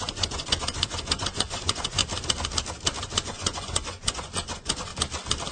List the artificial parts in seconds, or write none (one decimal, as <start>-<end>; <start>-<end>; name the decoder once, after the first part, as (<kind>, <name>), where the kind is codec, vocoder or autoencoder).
0.0-2.0 (vocoder, Vocos); 3.0-4.9